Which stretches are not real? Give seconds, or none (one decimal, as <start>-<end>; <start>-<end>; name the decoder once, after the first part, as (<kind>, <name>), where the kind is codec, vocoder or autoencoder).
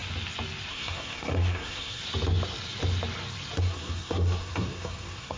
0.7-2.0 (codec, SNAC); 3.6-5.4